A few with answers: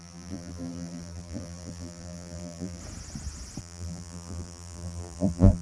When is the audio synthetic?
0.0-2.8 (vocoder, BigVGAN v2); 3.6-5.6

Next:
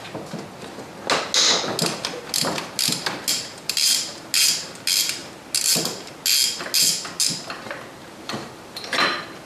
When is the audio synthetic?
none

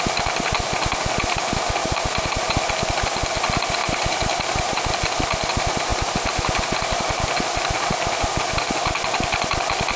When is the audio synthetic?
1.8-2.3 (vocoder, BigVGAN v2); 3.8-4.8

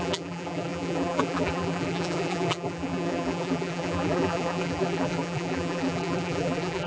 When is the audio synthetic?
0.0-6.9 (vocoder, BigVGAN v2)